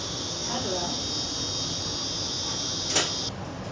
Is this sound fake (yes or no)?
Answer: no